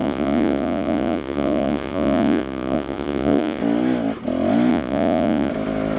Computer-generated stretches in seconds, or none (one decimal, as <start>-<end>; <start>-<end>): 0.0-3.6; 4.7-5.5